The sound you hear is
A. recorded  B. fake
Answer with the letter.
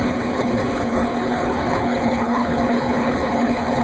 B